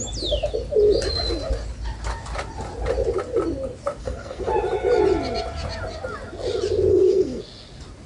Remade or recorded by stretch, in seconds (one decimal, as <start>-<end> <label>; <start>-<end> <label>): 0.0-4.0 recorded; 4.0-4.5 remade; 4.5-6.9 recorded; 6.9-7.4 remade; 7.4-8.1 recorded